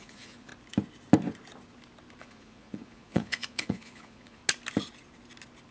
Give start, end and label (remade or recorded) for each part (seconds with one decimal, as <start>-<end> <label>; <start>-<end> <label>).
0.0-0.5 remade; 0.5-2.2 recorded; 2.2-4.4 remade; 4.4-5.7 recorded